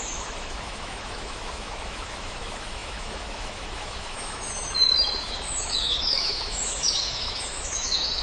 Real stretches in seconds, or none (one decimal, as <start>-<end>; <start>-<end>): none